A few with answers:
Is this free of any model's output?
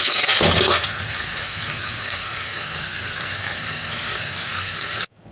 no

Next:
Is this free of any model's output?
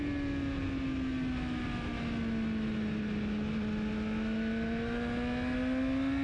yes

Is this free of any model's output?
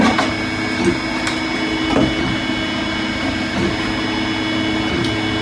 yes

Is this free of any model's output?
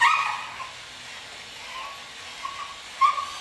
yes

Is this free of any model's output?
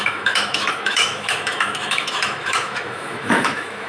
no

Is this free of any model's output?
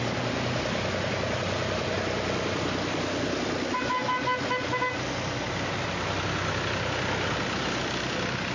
yes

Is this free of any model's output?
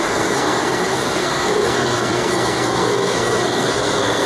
no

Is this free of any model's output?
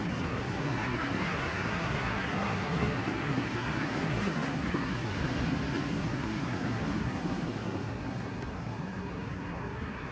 no